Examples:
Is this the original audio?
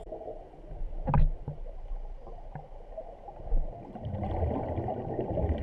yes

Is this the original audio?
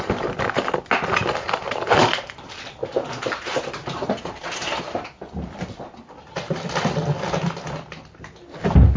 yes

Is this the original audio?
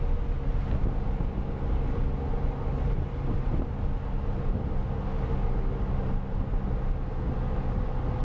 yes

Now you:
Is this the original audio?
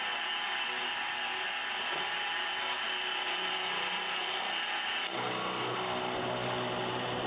yes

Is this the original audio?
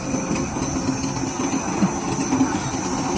yes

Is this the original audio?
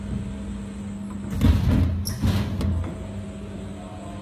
yes